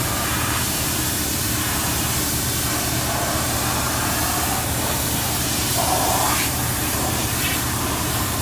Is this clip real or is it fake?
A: fake